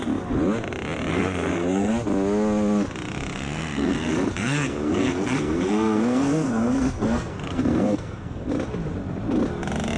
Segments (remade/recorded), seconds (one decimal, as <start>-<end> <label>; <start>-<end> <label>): 0.0-1.1 recorded; 1.1-1.9 remade; 1.9-3.3 recorded; 3.3-8.5 remade; 8.5-10.0 recorded